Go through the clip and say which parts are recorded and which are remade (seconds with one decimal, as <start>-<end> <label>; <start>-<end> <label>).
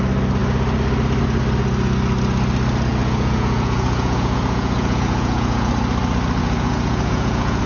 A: 0.0-2.9 recorded; 2.9-5.7 remade; 5.7-6.4 recorded; 6.4-7.7 remade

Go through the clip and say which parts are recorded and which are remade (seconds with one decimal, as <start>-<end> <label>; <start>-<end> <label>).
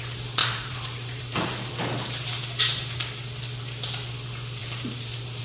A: 0.0-0.4 recorded; 0.4-1.7 remade; 1.7-4.6 recorded; 4.6-5.4 remade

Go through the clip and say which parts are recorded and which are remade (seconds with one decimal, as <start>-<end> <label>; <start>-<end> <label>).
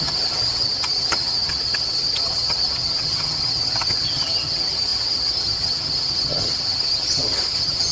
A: 0.0-7.9 remade